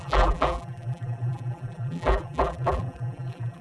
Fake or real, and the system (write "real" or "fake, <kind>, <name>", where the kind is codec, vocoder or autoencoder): fake, vocoder, BigVGAN v2